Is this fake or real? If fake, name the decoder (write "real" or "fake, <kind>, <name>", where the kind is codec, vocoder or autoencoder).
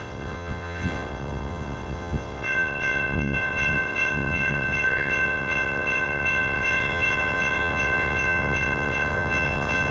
fake, vocoder, WaveNeXt